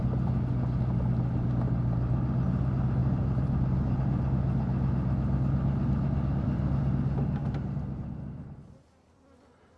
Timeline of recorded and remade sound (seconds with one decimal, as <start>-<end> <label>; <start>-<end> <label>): 0.0-3.0 recorded; 3.0-4.0 remade; 4.0-7.4 recorded; 7.4-8.9 remade; 8.9-9.8 recorded